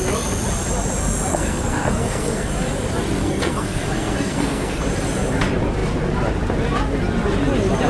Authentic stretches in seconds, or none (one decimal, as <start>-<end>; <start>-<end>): 0.0-1.3; 2.5-3.2; 4.8-7.9